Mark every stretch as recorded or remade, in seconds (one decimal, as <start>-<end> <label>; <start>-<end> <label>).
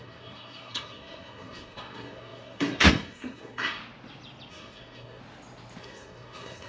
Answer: 0.0-3.8 remade; 3.8-4.5 recorded; 4.5-5.2 remade; 5.2-5.8 recorded; 5.8-6.7 remade